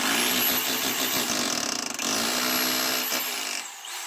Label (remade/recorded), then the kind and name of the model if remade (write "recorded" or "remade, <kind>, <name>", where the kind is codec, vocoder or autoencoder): recorded